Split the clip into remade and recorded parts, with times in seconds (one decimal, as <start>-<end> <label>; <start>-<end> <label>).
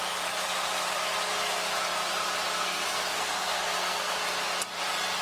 0.0-2.6 recorded; 2.6-4.2 remade; 4.2-5.2 recorded